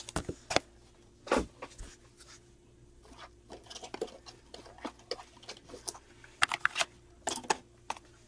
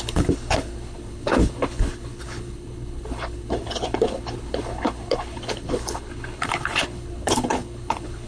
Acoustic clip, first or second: first